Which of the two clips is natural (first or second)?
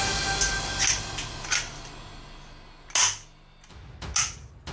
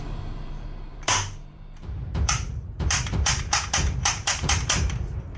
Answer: first